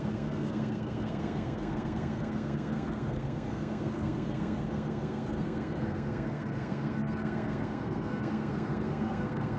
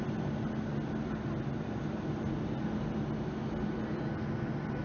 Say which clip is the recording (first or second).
second